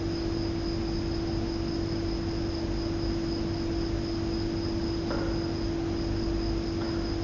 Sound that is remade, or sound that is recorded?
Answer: recorded